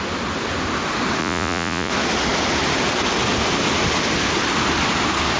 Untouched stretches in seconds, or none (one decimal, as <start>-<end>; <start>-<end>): 0.0-1.2; 1.9-5.4